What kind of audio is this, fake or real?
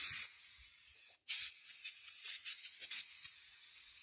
fake